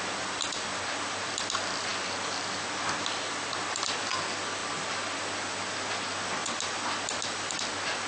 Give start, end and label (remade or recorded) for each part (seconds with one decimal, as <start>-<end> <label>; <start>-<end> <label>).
0.0-8.1 recorded